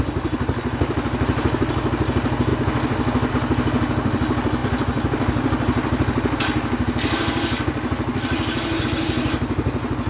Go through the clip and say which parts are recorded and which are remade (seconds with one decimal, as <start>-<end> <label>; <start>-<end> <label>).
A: 0.0-10.1 recorded